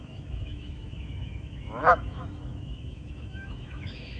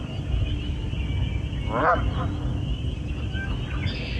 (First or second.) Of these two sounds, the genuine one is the second